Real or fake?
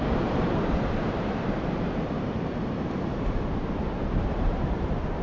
fake